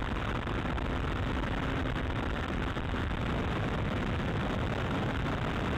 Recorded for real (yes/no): no